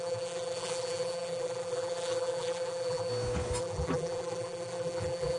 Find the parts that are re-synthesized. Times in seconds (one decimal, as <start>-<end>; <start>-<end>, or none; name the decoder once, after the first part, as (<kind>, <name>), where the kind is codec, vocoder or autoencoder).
0.0-3.1 (vocoder, BigVGAN v2); 3.6-5.4